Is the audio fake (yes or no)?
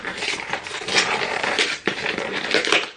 yes